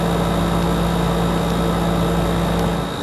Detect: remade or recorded recorded